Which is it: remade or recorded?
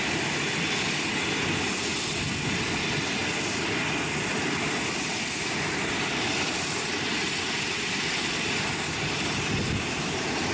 recorded